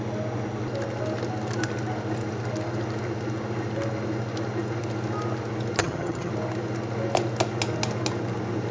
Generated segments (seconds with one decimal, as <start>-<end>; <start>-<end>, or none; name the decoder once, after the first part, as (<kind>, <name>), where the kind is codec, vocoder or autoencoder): 5.8-6.3 (vocoder, HiFi-GAN)